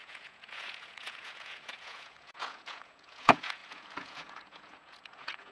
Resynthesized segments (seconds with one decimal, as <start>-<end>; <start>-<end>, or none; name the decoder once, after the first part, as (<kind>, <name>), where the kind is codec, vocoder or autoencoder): 0.0-5.5 (vocoder, Vocos)